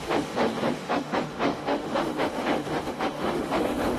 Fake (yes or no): yes